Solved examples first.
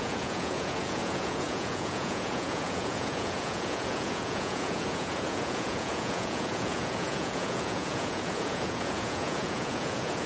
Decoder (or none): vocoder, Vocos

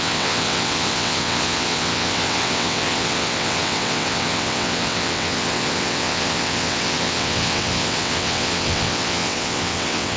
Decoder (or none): vocoder, WaveNeXt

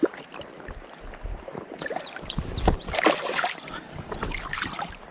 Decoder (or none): none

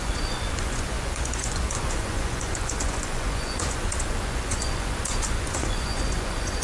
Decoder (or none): vocoder, Vocos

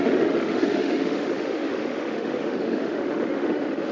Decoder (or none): autoencoder, DAC-VAE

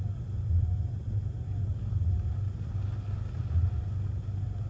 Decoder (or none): none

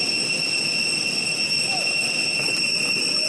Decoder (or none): none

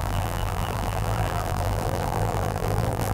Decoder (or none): vocoder, BigVGAN v2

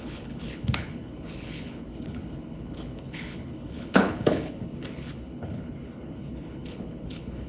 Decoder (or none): codec, HILCodec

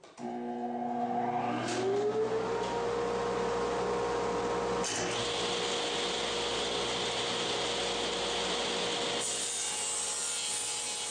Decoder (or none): none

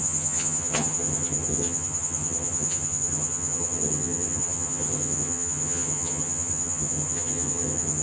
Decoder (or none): vocoder, HiFi-GAN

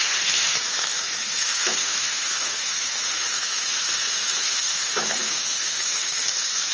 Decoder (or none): autoencoder, DAC-VAE